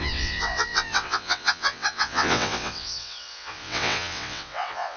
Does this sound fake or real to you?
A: fake